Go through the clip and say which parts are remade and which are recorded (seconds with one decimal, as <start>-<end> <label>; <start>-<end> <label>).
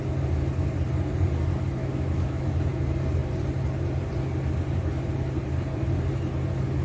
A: 0.0-1.8 recorded; 1.8-2.5 remade; 2.5-6.8 recorded